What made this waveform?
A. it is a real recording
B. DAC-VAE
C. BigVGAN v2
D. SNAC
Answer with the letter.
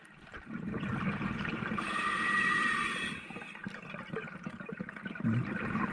A